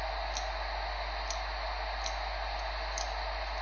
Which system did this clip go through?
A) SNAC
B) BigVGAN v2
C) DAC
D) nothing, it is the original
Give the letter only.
D